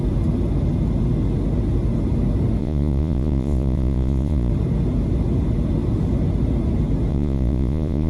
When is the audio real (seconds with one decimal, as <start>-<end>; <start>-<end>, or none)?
0.0-2.6; 4.5-7.1